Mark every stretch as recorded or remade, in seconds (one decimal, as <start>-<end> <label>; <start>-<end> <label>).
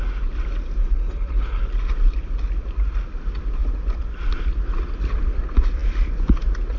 0.0-0.8 recorded; 0.8-1.6 remade; 1.6-6.8 recorded